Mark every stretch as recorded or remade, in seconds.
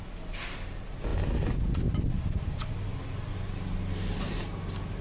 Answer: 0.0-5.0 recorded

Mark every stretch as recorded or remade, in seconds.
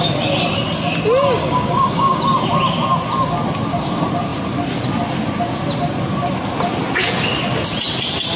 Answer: 0.0-1.4 recorded; 1.4-2.2 remade; 2.2-8.4 recorded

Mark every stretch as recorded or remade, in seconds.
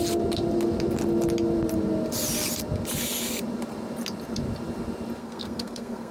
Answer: 0.0-5.2 recorded; 5.2-6.1 remade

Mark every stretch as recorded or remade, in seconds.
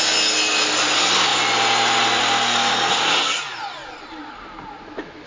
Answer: 0.0-5.3 recorded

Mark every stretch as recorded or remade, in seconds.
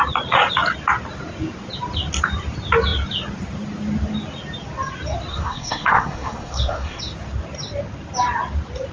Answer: 0.0-5.3 recorded; 5.3-7.0 remade; 7.0-8.9 recorded